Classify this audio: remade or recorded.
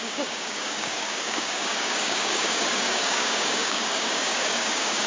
remade